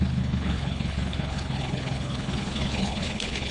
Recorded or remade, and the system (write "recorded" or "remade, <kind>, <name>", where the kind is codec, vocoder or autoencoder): remade, codec, HILCodec